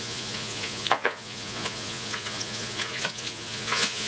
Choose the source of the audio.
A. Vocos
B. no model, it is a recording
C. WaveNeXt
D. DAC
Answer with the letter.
A